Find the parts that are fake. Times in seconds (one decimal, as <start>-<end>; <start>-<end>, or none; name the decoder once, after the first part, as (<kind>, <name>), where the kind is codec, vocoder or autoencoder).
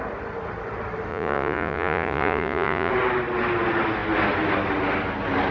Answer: 1.1-2.9 (vocoder, Vocos)